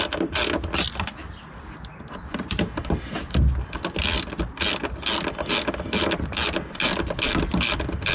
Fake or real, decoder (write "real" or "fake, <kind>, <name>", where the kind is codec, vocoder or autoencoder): real